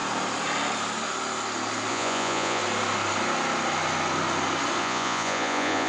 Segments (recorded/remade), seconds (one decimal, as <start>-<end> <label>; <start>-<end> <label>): 0.0-1.9 recorded; 1.9-2.6 remade; 2.6-4.8 recorded; 4.8-5.9 remade